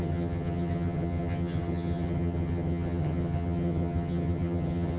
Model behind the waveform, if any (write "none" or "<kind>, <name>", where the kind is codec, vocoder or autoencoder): vocoder, HiFi-GAN